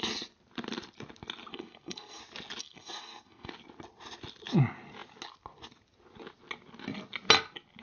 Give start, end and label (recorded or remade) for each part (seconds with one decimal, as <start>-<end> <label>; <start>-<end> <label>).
0.0-1.5 recorded; 1.5-2.2 remade; 2.2-2.6 recorded; 2.6-3.5 remade; 3.5-7.8 recorded